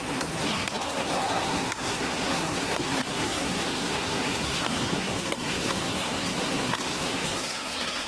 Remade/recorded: remade